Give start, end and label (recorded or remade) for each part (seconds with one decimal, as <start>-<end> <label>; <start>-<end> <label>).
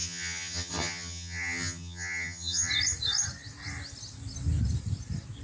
0.0-2.7 remade; 2.7-5.4 recorded